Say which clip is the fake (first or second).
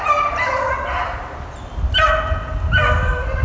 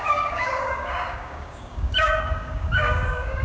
second